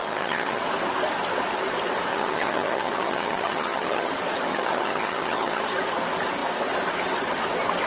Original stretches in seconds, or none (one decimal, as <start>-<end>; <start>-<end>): 0.6-2.1; 4.1-4.5; 5.6-7.9